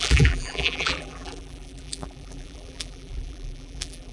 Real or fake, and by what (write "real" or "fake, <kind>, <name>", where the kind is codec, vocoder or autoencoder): fake, vocoder, BigVGAN v2